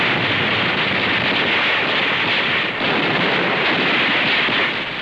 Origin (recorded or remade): recorded